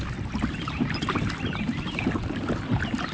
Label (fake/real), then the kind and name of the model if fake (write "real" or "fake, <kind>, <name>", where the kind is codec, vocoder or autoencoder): real